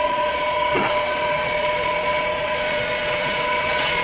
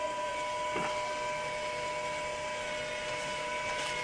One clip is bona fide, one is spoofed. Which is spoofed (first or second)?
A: first